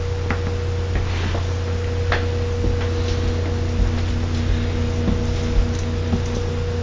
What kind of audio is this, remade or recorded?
recorded